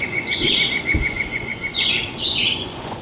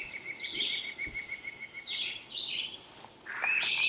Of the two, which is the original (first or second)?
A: second